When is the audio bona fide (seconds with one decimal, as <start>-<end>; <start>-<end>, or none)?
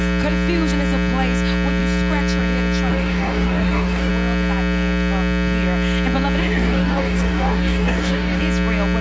0.0-2.9; 4.1-6.4; 8.4-9.0